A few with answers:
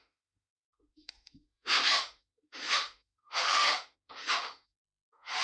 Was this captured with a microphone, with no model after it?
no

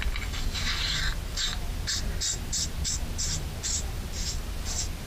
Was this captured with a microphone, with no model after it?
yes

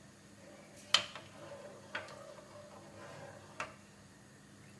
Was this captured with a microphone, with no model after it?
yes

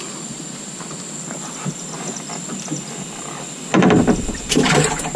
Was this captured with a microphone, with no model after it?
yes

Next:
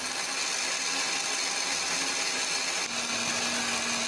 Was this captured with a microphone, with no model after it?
yes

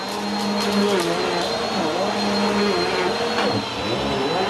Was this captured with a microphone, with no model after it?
yes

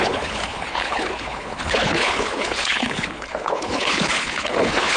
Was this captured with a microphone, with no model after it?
no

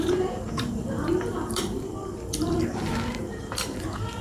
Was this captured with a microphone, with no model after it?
no